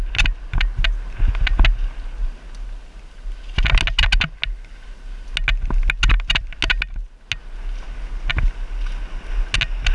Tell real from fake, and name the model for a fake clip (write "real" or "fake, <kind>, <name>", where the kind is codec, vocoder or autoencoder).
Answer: real